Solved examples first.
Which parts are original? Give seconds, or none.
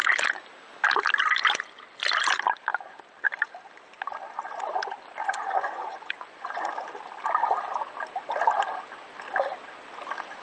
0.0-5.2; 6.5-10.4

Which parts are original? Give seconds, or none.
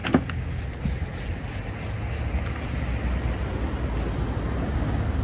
0.6-5.2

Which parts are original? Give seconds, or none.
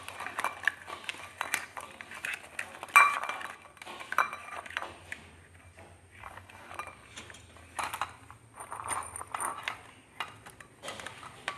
0.0-6.2; 6.7-11.6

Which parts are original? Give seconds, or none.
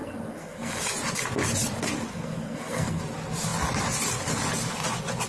0.8-2.1; 3.0-5.3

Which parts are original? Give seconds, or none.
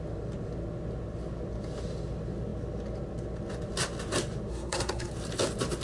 0.0-4.5; 5.1-5.8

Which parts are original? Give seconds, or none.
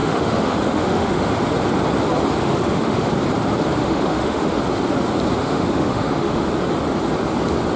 1.3-2.4; 3.1-3.8; 4.6-5.4; 6.5-7.8